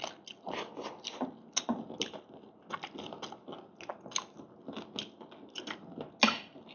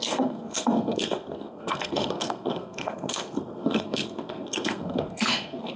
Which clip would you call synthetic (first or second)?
second